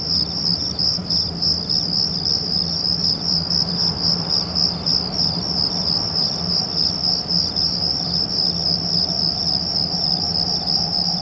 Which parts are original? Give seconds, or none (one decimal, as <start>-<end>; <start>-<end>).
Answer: 0.0-11.2